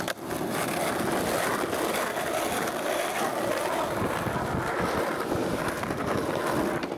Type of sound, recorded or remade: recorded